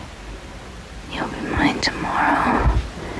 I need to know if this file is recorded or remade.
recorded